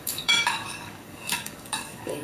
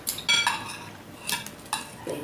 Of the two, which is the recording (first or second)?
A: second